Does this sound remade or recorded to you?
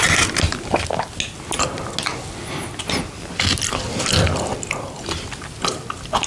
recorded